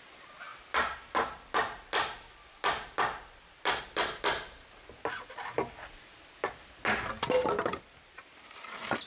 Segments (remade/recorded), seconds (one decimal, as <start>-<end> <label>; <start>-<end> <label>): 0.0-9.1 recorded